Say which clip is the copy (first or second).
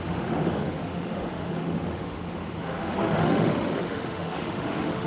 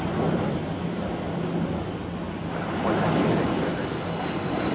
first